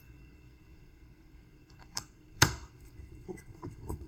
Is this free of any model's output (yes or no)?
no